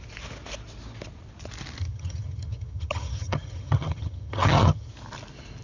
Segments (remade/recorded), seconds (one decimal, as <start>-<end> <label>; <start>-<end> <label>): 0.0-1.8 recorded; 1.8-4.9 remade; 4.9-5.6 recorded